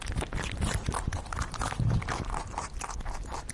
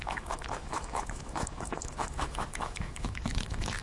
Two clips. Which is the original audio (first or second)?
first